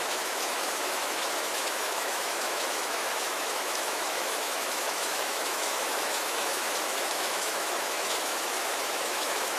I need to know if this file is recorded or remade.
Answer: remade